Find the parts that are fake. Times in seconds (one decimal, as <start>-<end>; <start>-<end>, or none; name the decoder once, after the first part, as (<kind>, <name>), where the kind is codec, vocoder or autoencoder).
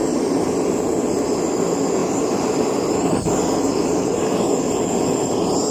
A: none